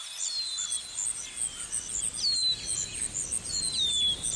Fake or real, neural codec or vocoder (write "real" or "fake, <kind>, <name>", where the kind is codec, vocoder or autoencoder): real